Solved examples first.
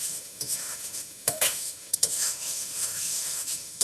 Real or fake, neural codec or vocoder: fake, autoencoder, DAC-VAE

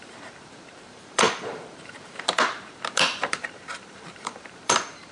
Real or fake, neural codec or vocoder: fake, vocoder, BigVGAN v2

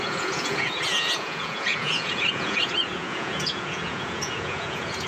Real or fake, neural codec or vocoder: fake, vocoder, Vocos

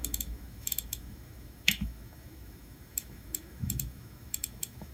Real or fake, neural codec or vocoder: fake, autoencoder, DAC-VAE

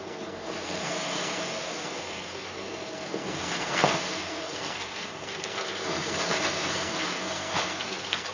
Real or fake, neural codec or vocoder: fake, codec, SNAC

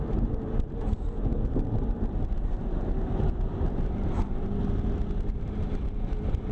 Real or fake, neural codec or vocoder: fake, vocoder, BigVGAN v2